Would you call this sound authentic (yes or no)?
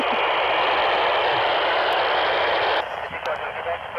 yes